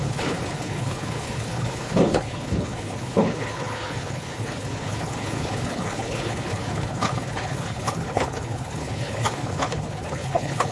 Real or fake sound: fake